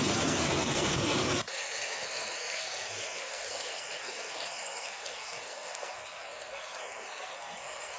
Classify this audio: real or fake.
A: fake